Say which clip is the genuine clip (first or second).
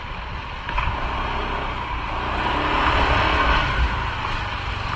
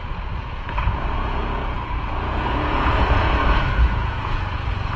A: first